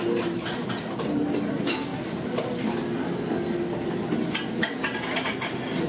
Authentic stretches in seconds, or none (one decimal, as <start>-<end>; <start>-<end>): 0.0-5.9